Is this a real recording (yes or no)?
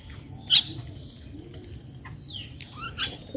yes